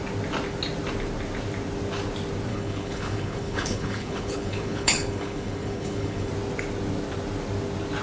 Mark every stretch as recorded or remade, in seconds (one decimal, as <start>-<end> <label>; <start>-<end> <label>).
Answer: 0.0-2.5 recorded; 2.5-6.3 remade; 6.3-8.0 recorded